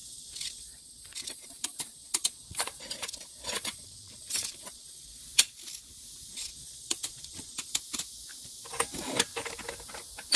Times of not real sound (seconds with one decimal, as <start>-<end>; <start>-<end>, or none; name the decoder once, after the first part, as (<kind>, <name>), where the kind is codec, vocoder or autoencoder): 0.0-5.2 (vocoder, Vocos); 6.3-7.7